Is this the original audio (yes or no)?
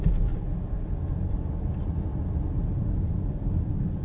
yes